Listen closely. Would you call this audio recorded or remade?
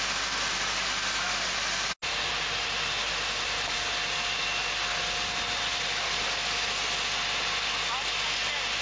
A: recorded